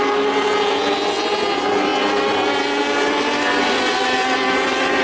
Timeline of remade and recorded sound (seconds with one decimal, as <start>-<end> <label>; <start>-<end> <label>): 0.0-5.0 recorded